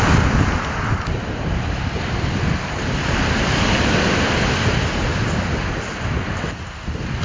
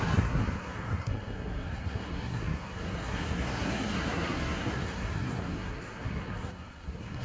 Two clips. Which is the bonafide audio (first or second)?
first